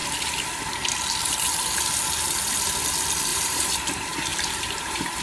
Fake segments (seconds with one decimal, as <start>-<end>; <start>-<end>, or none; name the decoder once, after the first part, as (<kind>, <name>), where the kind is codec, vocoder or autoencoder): 3.3-3.9 (vocoder, BigVGAN v2); 4.3-5.2